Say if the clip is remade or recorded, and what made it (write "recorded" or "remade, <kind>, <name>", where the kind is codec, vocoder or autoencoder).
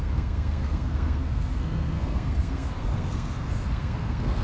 remade, codec, SNAC